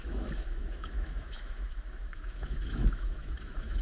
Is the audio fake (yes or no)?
yes